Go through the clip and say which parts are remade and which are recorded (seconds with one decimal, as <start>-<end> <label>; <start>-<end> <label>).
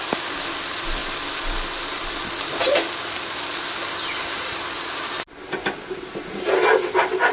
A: 0.0-7.3 recorded